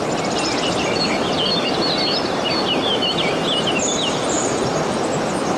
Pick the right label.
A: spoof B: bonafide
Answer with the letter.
B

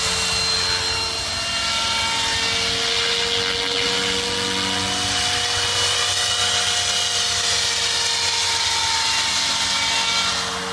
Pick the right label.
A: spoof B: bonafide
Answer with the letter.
B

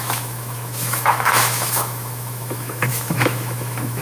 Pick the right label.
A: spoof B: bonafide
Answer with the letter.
A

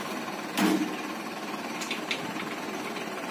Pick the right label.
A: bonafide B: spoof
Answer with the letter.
A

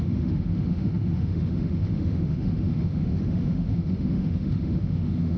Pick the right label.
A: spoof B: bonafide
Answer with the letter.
A